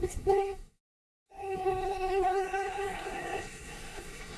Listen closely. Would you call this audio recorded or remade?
remade